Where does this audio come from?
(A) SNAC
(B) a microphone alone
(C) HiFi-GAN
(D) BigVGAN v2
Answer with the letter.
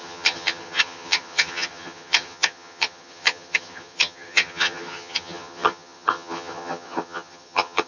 C